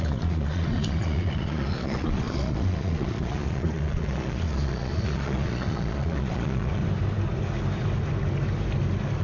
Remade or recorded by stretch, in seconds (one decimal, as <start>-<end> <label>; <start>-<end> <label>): 0.0-6.8 remade; 6.8-9.2 recorded